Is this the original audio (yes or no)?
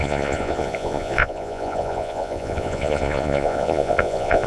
no